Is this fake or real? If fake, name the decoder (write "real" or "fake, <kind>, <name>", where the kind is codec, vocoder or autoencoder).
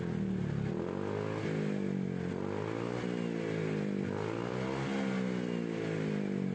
real